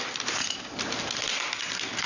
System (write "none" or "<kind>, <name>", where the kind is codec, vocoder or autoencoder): none